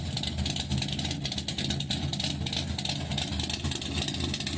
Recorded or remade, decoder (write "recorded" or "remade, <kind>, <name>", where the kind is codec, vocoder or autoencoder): recorded